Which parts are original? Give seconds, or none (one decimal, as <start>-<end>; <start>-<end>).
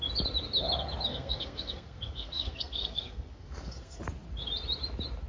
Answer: 0.0-1.1; 4.0-5.3